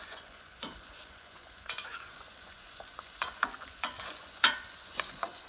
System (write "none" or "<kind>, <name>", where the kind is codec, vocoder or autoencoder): vocoder, Vocos